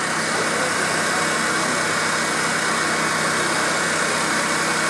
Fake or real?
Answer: real